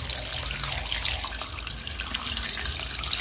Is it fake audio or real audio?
real